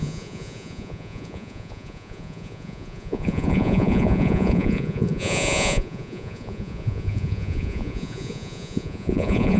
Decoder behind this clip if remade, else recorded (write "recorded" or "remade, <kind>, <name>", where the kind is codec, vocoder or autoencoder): remade, vocoder, Vocos